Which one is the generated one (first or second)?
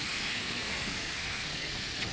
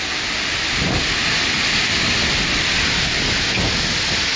first